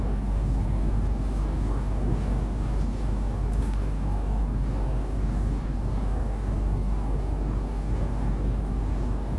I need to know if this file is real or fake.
fake